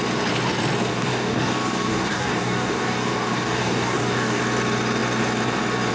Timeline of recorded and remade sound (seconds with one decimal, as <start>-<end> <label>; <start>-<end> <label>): 0.0-0.9 recorded; 0.9-4.4 remade; 4.4-5.9 recorded